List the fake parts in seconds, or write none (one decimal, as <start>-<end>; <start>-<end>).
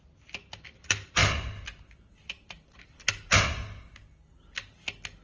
none